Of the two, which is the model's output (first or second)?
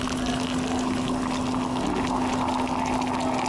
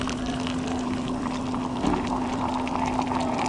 second